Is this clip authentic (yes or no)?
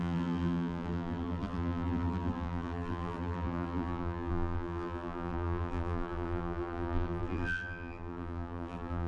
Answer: no